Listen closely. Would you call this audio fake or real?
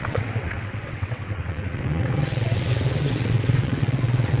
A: fake